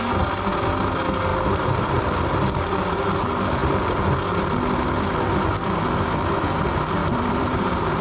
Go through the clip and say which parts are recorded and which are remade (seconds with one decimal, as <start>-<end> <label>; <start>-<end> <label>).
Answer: 0.0-1.3 recorded; 1.3-2.0 remade; 2.0-7.0 recorded; 7.0-8.0 remade